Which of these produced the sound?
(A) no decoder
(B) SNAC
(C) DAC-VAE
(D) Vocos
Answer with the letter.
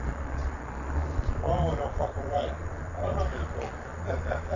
D